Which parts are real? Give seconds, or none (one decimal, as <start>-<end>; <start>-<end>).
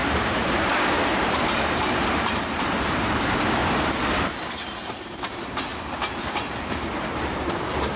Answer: 3.6-5.0; 5.7-7.2